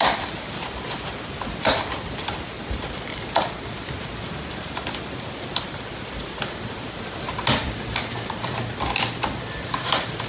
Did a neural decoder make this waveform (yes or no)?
yes